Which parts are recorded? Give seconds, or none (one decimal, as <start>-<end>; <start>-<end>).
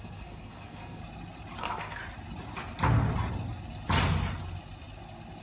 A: 1.0-1.6; 2.0-5.4